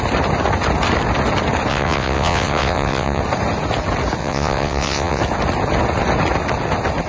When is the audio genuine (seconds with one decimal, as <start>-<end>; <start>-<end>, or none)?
0.0-1.7; 3.2-4.2; 5.2-7.1